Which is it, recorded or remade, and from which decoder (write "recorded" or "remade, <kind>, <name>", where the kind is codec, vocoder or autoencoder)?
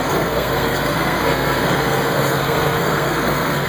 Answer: remade, codec, SNAC